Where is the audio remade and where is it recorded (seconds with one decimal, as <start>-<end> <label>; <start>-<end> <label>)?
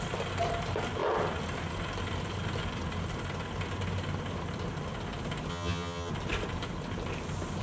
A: 0.0-5.5 recorded; 5.5-6.1 remade; 6.1-7.6 recorded